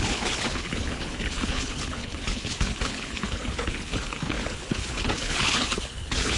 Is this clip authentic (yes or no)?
no